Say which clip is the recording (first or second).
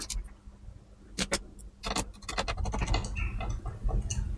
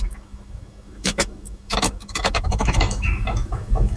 first